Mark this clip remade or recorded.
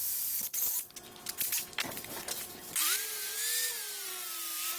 recorded